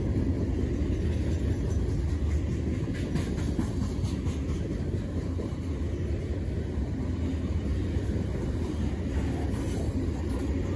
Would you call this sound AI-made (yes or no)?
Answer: no